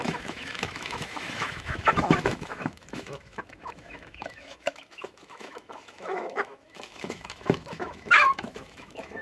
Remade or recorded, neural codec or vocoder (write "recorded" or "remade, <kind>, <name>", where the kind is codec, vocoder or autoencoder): remade, autoencoder, DAC-VAE